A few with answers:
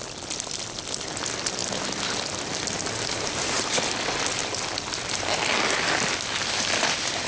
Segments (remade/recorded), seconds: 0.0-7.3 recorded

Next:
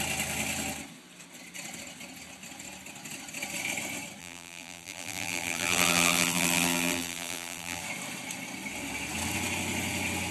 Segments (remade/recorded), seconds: 0.0-4.2 recorded; 4.2-7.8 remade; 7.8-10.3 recorded

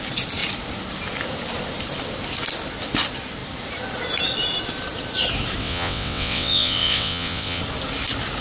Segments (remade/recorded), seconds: 0.0-5.6 recorded; 5.6-7.6 remade; 7.6-8.4 recorded

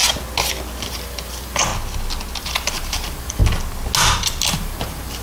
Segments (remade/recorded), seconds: 0.0-0.9 recorded; 0.9-1.7 remade; 1.7-2.4 recorded; 2.4-3.4 remade; 3.4-4.5 recorded; 4.5-5.2 remade